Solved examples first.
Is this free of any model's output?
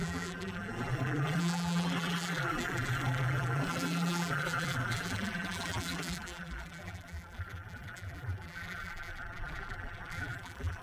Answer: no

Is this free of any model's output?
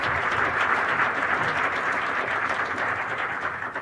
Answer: no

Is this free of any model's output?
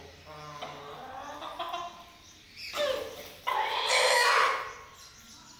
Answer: yes